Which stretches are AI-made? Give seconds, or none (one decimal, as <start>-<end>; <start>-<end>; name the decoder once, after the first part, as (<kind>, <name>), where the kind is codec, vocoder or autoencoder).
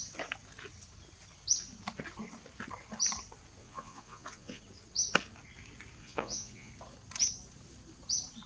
3.6-4.6 (vocoder, Vocos); 6.0-6.7